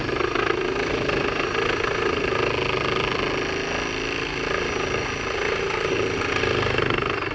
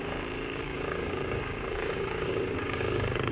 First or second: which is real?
first